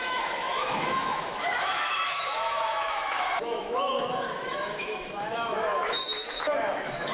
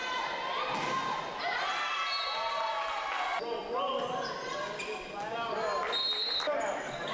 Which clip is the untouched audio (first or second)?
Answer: second